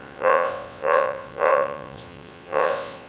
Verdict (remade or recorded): remade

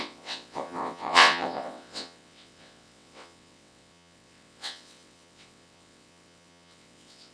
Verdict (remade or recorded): remade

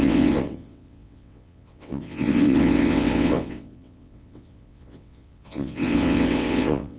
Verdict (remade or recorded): remade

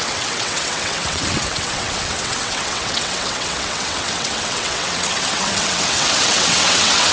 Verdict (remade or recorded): remade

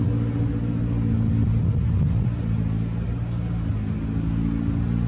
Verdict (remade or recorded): recorded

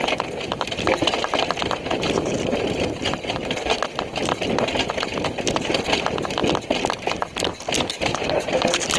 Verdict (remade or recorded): recorded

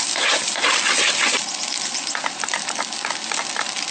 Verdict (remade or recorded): recorded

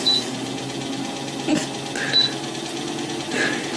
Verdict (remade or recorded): recorded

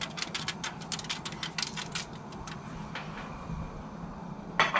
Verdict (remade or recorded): recorded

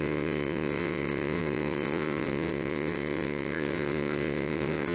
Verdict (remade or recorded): remade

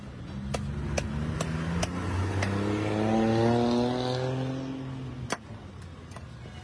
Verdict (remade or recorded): recorded